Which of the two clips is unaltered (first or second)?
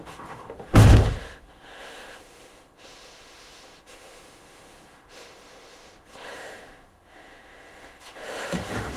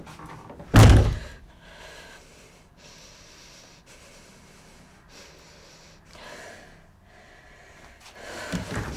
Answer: second